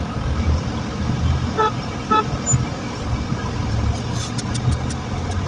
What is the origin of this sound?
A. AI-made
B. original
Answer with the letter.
B